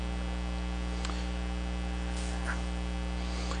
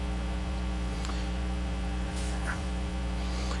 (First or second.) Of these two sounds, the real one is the first